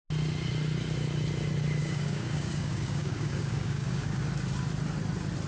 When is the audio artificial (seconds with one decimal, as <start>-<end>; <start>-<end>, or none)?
1.8-4.2